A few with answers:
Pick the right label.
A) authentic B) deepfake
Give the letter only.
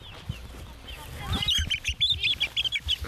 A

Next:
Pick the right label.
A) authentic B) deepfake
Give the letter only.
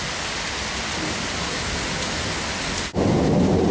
A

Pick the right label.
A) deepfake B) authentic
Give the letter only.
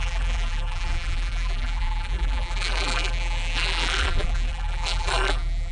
A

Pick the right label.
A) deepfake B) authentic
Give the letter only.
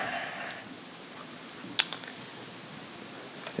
B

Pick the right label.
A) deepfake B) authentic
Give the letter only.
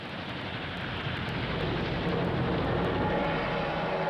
B